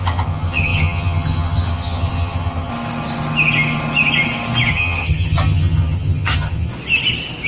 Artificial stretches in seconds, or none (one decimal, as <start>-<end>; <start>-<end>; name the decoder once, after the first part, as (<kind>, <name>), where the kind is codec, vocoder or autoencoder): 0.0-2.7 (vocoder, HiFi-GAN); 4.7-6.7